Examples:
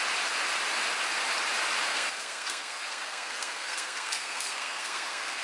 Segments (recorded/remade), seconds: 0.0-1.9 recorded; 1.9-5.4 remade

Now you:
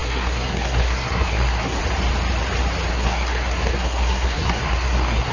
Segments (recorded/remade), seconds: 0.0-1.8 remade; 1.8-2.9 recorded; 2.9-5.3 remade

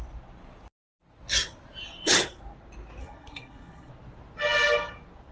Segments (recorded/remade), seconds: 0.0-3.0 recorded; 3.0-3.9 remade; 3.9-5.3 recorded

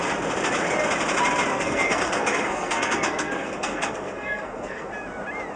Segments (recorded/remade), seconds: 0.0-1.5 recorded; 1.5-4.9 remade; 4.9-5.6 recorded

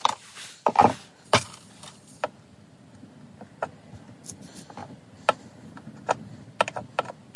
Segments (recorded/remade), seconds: 0.0-7.4 recorded

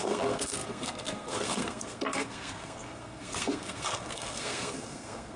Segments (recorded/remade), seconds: 0.0-5.4 remade